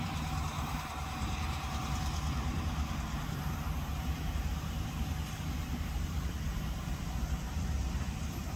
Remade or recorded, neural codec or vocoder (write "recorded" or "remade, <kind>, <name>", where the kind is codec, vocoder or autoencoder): remade, vocoder, BigVGAN v2